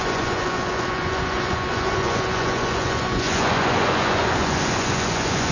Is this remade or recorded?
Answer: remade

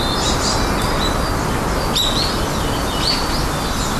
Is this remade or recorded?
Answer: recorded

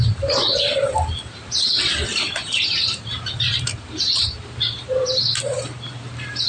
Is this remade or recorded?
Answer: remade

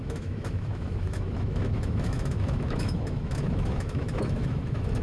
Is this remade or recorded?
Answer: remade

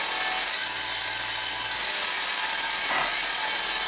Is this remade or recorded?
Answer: recorded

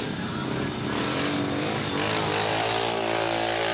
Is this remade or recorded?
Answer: recorded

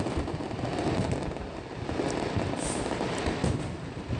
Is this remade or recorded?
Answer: recorded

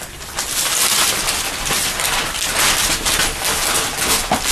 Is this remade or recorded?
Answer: recorded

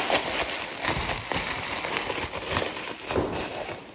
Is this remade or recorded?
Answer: recorded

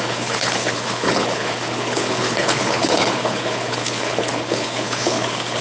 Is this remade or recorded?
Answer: remade